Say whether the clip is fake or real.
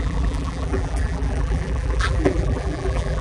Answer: fake